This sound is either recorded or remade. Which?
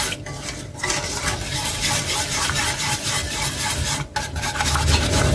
recorded